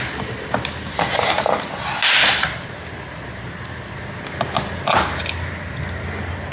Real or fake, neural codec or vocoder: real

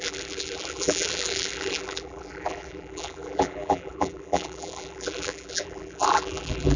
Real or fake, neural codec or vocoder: fake, vocoder, BigVGAN v2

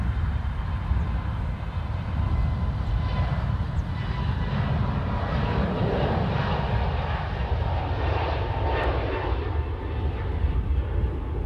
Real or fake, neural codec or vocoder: real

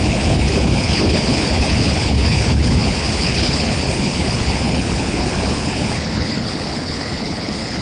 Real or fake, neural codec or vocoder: fake, codec, HILCodec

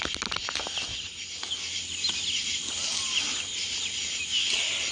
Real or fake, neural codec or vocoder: real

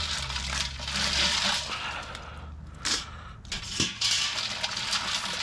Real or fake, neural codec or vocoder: real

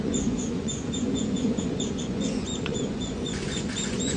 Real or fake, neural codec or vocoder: fake, vocoder, Vocos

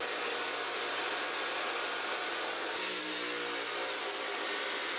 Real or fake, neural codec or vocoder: real